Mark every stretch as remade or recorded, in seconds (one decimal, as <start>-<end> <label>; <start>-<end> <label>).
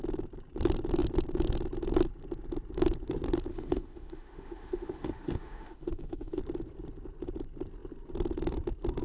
0.0-3.5 recorded; 3.5-6.4 remade; 6.4-9.0 recorded